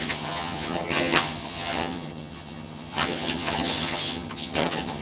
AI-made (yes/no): yes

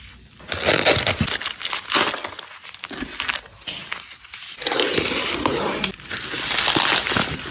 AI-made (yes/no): no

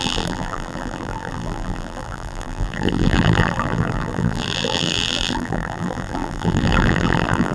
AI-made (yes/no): yes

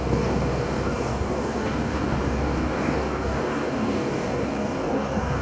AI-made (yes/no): yes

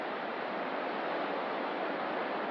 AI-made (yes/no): no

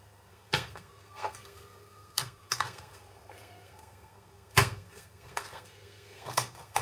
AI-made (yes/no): yes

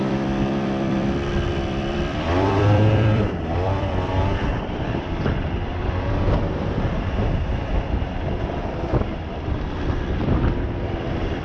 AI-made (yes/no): yes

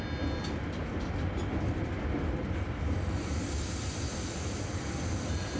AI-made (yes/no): no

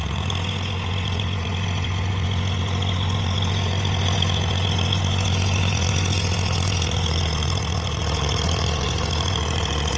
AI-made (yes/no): yes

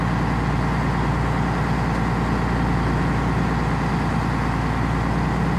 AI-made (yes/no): no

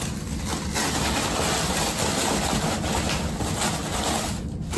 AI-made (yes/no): no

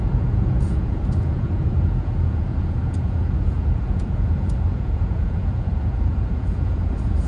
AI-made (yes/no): yes